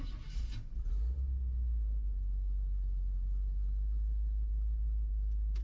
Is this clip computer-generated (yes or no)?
no